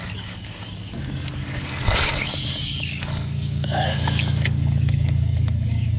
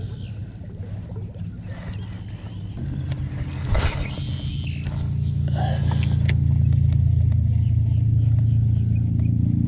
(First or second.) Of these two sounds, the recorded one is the second